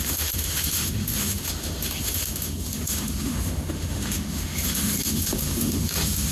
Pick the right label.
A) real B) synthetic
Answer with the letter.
B